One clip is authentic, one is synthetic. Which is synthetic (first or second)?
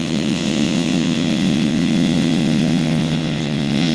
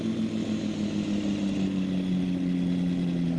first